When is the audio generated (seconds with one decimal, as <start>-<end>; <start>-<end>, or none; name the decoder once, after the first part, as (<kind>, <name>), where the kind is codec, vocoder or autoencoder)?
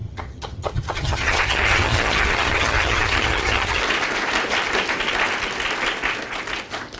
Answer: 0.0-3.8 (vocoder, HiFi-GAN)